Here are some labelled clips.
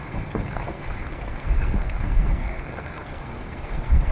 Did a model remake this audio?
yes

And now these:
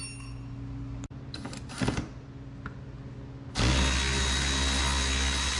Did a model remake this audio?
no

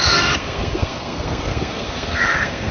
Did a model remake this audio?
yes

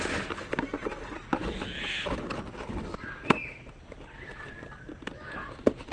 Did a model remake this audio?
no